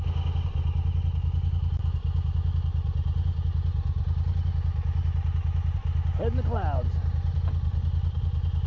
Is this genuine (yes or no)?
yes